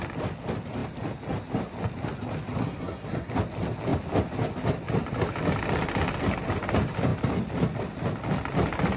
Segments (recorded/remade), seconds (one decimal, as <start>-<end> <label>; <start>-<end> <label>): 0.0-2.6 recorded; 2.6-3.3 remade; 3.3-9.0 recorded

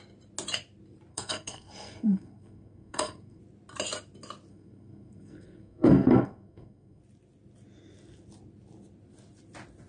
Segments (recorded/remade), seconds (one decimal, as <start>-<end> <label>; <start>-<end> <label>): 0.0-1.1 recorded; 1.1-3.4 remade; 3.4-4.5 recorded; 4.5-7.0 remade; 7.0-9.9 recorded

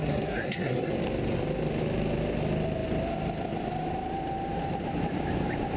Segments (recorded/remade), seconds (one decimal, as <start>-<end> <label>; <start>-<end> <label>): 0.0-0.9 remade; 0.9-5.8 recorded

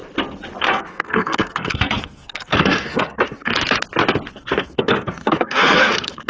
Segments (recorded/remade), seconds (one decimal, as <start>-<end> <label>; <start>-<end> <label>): 0.0-0.6 recorded; 0.6-3.5 remade; 3.5-4.3 recorded; 4.3-6.3 remade

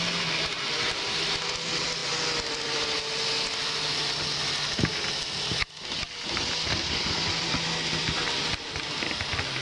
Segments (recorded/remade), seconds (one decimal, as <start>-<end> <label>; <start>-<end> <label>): 0.0-9.6 recorded